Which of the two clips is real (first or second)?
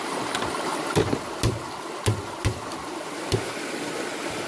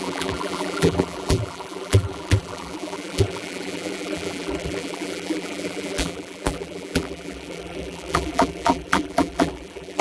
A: first